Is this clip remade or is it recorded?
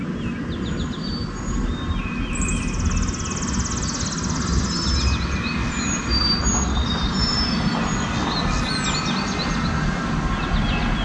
recorded